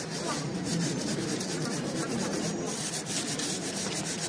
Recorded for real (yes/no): yes